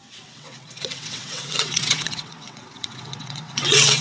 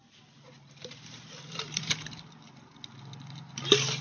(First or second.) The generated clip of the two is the first